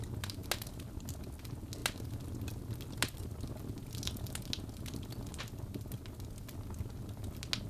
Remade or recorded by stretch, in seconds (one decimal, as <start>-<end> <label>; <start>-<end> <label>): 0.0-7.7 recorded

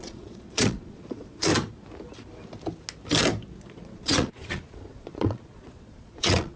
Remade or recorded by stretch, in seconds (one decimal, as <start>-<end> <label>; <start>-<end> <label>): 0.0-1.5 remade; 1.5-3.7 recorded; 3.7-6.6 remade

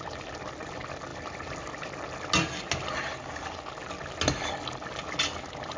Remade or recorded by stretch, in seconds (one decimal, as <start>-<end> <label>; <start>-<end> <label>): 0.0-5.8 recorded

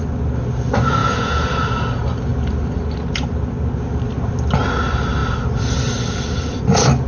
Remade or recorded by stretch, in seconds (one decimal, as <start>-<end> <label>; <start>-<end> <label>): 0.0-1.0 recorded; 1.0-1.5 remade; 1.5-7.1 recorded

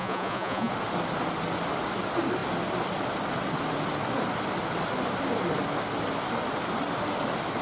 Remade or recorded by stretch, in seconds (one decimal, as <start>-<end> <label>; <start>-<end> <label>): 0.0-0.7 remade; 0.7-7.6 recorded

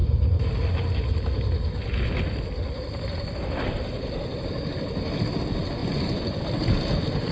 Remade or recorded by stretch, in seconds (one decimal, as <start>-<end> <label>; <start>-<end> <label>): 0.0-5.8 recorded; 5.8-6.4 remade; 6.4-7.3 recorded

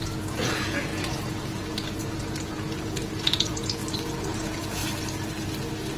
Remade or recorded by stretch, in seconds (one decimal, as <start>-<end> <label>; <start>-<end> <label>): 0.0-3.8 remade; 3.8-4.3 recorded; 4.3-4.8 remade; 4.8-6.0 recorded

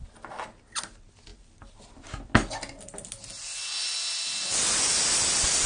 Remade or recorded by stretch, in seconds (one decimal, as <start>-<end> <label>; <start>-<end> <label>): 0.0-5.7 recorded